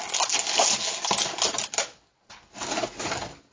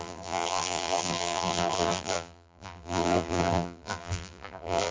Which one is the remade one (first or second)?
second